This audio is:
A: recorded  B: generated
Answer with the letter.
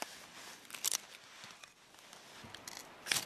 A